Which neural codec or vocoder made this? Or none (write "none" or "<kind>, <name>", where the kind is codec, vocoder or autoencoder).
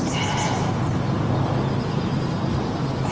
none